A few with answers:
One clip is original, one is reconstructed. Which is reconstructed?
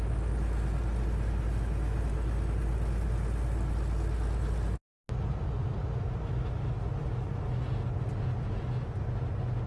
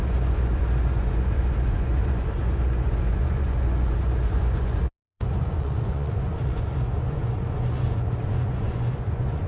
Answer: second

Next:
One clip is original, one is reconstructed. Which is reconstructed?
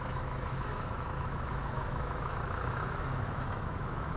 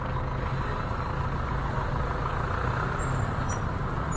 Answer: first